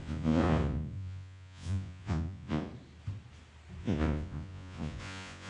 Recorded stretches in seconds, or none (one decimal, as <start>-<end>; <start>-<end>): 2.7-3.8